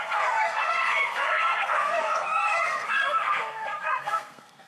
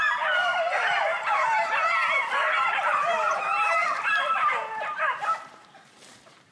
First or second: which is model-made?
first